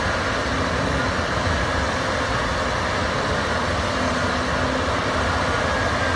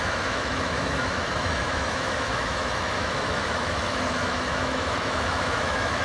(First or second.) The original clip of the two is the first